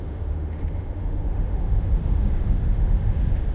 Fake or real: fake